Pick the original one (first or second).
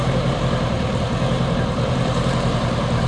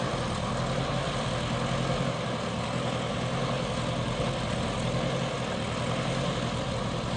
second